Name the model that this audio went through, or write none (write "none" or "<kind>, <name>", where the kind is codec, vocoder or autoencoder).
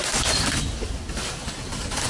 none